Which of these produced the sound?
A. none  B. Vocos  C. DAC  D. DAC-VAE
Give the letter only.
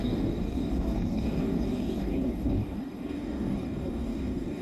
C